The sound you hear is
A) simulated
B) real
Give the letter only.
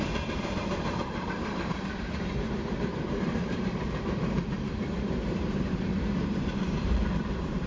A